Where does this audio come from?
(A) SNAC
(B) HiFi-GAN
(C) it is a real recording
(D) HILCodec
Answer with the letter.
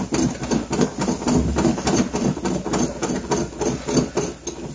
C